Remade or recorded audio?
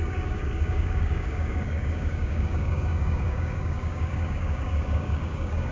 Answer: remade